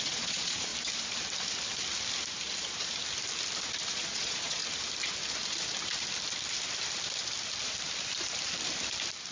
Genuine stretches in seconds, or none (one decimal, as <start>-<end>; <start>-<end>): 0.7-3.9; 4.6-9.3